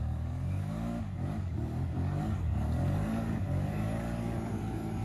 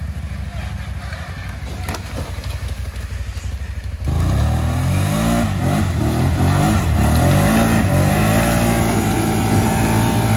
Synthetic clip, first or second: first